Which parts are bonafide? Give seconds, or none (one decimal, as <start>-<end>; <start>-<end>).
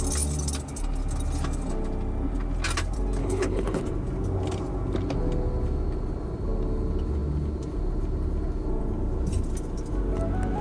0.0-3.2; 3.8-10.6